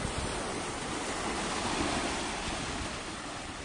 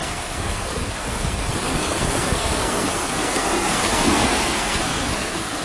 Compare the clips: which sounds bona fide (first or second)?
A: first